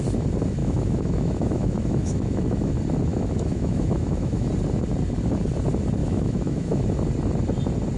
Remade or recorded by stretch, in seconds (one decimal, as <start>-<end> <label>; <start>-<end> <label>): 0.0-0.6 recorded; 0.6-2.7 remade; 2.7-3.1 recorded; 3.1-4.5 remade; 4.5-6.0 recorded; 6.0-6.9 remade; 6.9-8.0 recorded